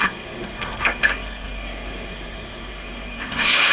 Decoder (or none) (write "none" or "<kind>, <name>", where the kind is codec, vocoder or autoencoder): codec, SNAC